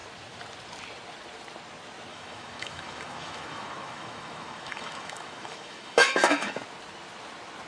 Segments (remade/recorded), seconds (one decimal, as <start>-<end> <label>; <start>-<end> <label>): 0.0-2.1 recorded; 2.1-6.6 remade; 6.6-7.7 recorded